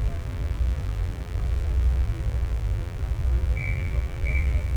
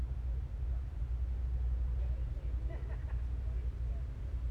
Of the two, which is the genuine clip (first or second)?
second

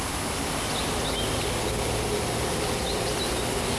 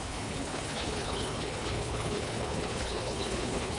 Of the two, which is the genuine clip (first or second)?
first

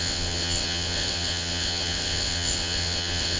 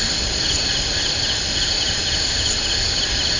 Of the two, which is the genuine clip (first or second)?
second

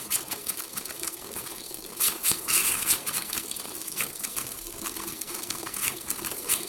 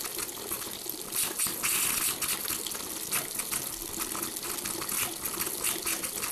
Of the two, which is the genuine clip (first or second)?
second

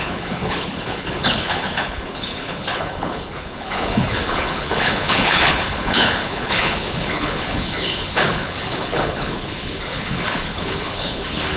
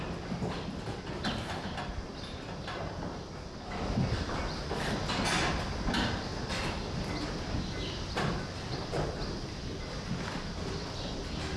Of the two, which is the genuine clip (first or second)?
second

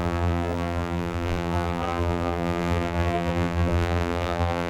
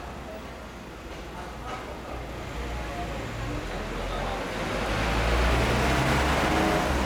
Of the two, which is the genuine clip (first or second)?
second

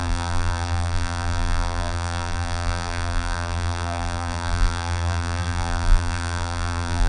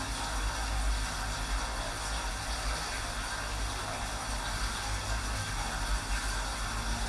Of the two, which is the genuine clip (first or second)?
second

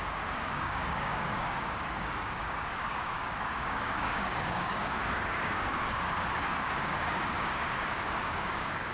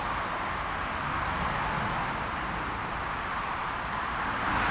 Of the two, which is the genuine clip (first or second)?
second